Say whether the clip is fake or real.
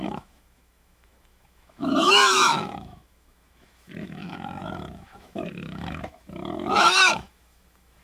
fake